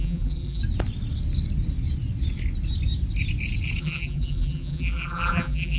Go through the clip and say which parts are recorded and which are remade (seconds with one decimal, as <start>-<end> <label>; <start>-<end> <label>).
0.0-0.6 remade; 0.6-3.8 recorded; 3.8-5.8 remade